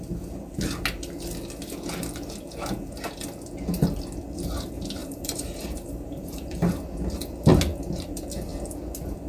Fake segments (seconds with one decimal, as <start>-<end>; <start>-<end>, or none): 5.0-6.6